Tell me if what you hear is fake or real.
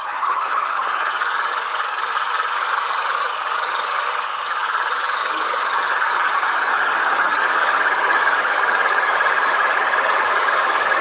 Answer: fake